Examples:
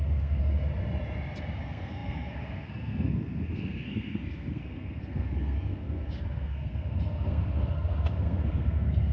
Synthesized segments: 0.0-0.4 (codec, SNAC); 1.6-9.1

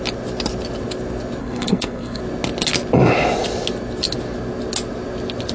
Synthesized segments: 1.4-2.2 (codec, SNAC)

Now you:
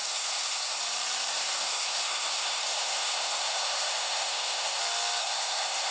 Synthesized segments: 0.0-0.8 (codec, SNAC); 1.3-4.8; 5.2-5.9

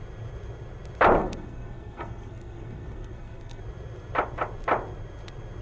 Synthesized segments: 1.2-3.6 (codec, SNAC)